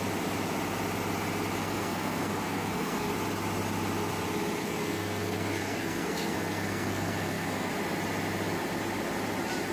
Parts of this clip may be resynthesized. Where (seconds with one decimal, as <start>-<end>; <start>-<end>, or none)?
1.6-3.1; 4.6-7.7